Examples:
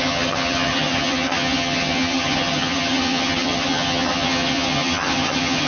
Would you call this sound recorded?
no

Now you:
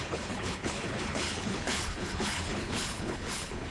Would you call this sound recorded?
no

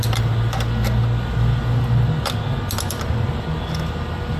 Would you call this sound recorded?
yes